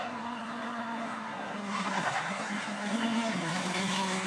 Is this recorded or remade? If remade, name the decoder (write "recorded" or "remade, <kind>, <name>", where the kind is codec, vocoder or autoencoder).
remade, codec, SNAC